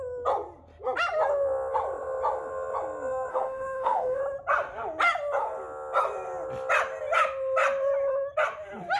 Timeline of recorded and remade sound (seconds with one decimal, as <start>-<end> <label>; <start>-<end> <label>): 0.0-3.3 recorded; 3.3-4.2 remade; 4.2-9.0 recorded